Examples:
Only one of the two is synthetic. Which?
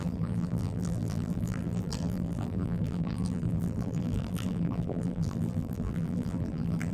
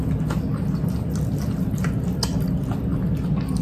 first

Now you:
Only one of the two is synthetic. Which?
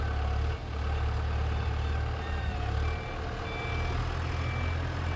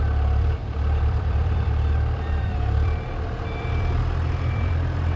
second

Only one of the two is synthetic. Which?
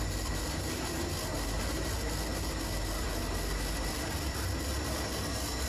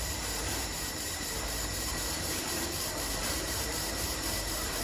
second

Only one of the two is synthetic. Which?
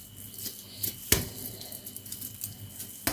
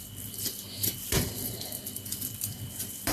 second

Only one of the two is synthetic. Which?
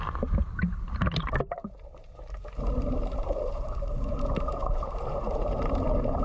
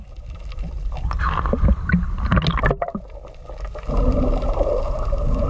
first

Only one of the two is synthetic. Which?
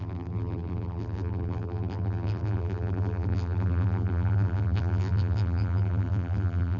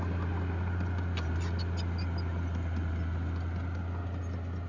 first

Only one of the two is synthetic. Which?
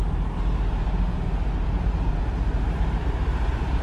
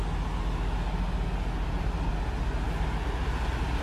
first